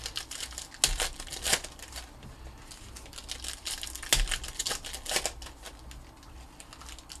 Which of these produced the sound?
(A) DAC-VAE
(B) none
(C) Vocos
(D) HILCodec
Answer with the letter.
B